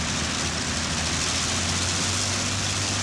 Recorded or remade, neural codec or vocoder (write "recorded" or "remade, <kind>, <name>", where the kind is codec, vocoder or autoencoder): recorded